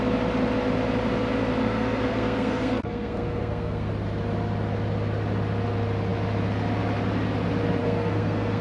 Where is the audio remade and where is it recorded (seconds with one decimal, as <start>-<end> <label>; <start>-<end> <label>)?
0.0-1.6 recorded; 1.6-3.9 remade; 3.9-7.8 recorded; 7.8-8.6 remade